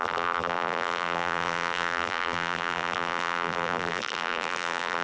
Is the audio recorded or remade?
remade